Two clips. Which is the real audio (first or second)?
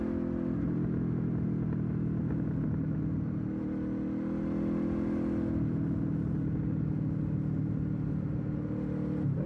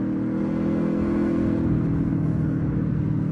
first